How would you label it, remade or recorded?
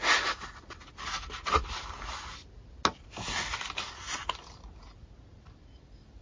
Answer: recorded